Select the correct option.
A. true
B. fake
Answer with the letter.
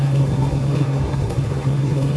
B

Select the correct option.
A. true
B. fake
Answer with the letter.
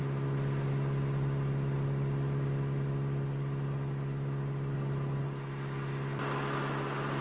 A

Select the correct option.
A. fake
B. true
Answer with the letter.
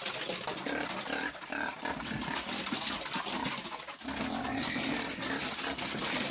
B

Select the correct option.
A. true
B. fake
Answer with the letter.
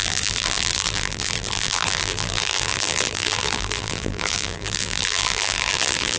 B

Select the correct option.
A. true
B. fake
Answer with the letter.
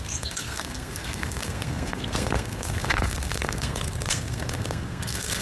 B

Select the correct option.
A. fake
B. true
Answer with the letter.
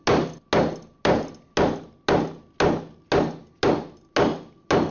B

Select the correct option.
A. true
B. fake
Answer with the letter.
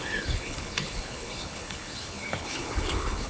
B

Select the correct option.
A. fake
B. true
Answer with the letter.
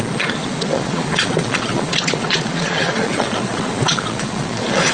A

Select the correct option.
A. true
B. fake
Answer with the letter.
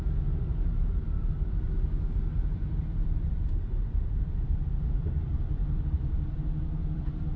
B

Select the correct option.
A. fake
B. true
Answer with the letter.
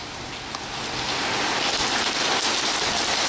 B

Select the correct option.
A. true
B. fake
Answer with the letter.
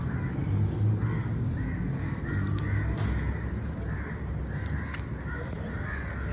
A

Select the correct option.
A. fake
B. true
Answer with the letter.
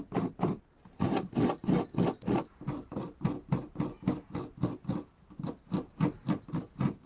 B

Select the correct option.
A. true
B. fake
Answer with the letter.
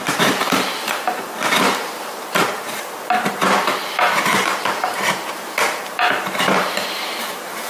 B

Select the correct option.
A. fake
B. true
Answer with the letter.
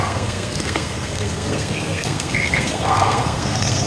A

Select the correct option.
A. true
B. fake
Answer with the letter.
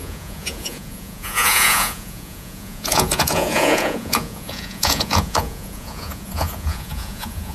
B